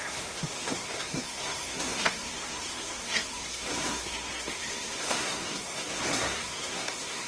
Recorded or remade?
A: remade